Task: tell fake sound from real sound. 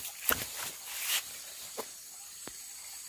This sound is real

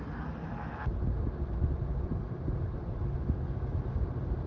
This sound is real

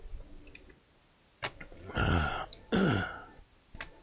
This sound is real